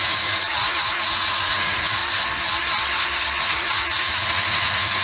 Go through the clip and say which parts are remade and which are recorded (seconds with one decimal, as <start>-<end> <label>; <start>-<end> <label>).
0.0-2.0 remade; 2.0-3.5 recorded; 3.5-5.0 remade